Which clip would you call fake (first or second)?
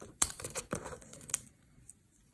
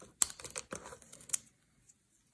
first